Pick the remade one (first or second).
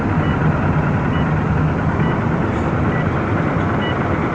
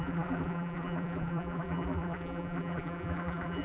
second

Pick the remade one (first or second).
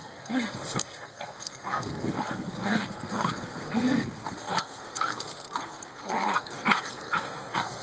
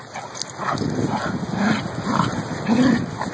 first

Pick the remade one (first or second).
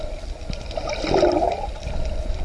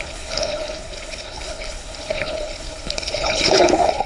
second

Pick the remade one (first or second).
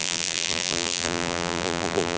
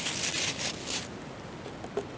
first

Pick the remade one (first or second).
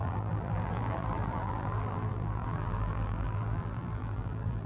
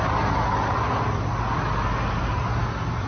first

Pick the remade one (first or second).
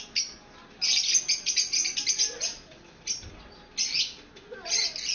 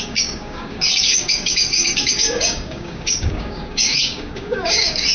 second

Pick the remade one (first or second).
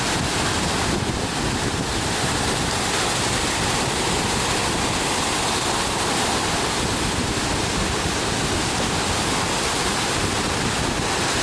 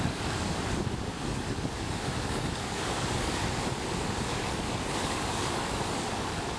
second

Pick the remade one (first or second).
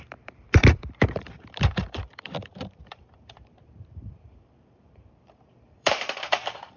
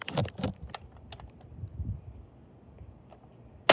first